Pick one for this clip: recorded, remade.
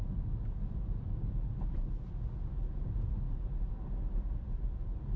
recorded